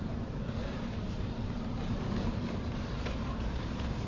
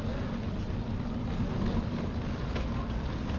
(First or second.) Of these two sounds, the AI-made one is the first